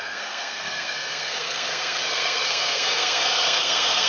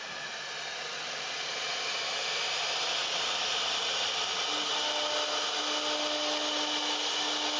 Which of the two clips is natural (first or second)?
second